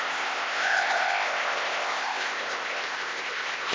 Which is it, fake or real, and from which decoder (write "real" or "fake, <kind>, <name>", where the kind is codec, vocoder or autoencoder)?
fake, codec, ZipCodec